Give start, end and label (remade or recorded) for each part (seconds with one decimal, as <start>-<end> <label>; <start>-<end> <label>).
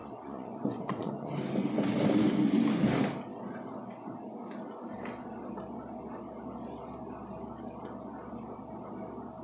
0.0-1.3 remade; 1.3-9.4 recorded